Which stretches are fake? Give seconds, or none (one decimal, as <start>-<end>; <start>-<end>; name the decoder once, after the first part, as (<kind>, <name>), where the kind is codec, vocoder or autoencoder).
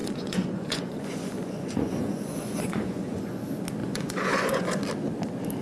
0.0-3.4 (vocoder, Vocos); 3.8-4.8